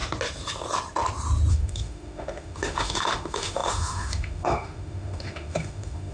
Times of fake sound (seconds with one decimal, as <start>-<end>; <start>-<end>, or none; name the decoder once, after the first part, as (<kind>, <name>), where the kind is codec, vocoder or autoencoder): 1.5-6.1 (autoencoder, DAC-VAE)